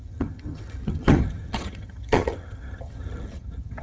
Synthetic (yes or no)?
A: yes